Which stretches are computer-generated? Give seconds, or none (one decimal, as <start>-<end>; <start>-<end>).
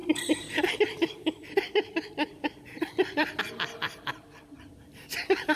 0.0-3.4